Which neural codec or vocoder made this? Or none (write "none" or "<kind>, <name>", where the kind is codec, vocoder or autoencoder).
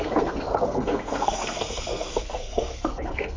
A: codec, SNAC